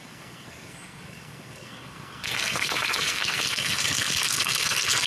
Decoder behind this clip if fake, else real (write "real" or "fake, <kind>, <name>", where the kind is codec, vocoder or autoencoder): fake, codec, SNAC